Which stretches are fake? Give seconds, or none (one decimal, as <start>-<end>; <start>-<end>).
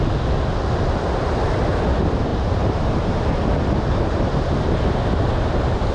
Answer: 2.3-3.3